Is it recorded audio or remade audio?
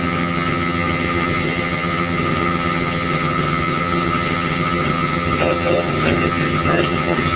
remade